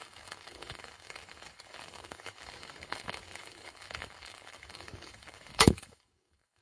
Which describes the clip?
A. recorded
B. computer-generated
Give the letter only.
B